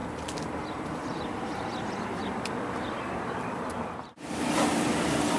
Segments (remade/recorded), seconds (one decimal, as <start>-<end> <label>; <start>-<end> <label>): 0.0-0.8 recorded; 0.8-5.4 remade